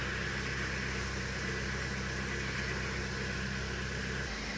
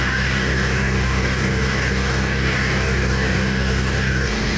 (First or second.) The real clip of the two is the first